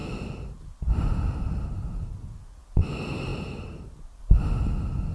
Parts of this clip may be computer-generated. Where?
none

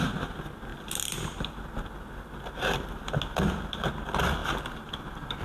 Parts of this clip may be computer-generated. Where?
none

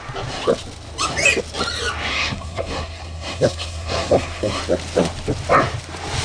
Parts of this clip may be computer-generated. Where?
2.1-4.6 (codec, SNAC)

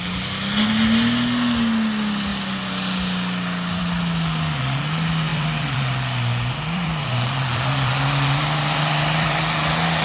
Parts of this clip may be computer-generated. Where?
5.3-9.4 (vocoder, BigVGAN v2)

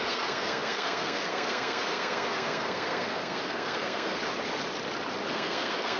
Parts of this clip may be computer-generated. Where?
0.0-4.2 (codec, SNAC); 5.3-6.0

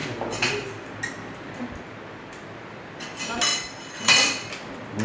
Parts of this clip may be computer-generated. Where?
none